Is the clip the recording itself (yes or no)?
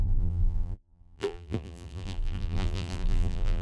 no